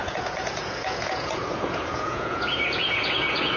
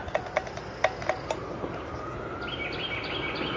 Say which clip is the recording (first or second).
second